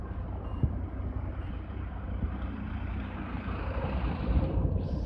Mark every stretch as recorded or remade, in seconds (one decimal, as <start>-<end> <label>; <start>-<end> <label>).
0.0-5.1 remade